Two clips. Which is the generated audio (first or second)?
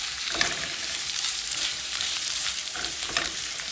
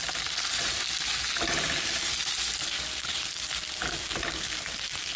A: first